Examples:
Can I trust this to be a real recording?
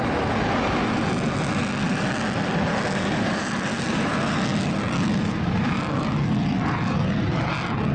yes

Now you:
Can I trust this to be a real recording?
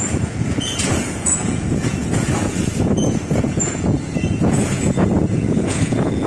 no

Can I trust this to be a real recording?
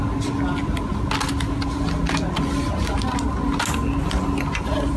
yes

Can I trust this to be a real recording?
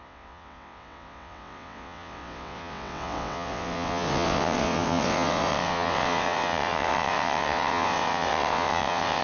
no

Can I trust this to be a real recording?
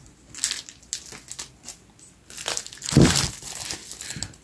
yes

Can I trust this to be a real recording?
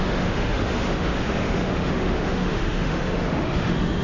no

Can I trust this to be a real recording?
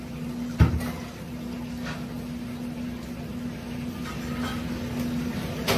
yes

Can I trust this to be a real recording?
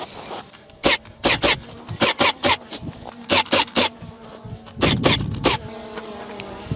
yes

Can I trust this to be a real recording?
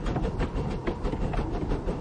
yes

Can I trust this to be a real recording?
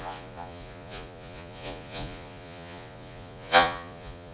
no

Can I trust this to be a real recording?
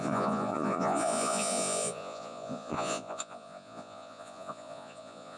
no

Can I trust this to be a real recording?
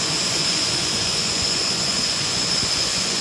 no